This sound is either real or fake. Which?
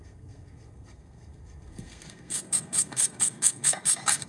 fake